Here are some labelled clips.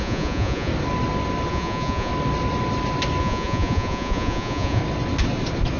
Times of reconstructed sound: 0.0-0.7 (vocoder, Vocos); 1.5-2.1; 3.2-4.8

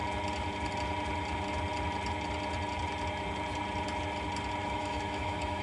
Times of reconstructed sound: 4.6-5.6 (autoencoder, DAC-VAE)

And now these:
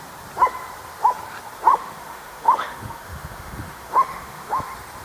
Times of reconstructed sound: 1.7-4.6 (autoencoder, DAC-VAE)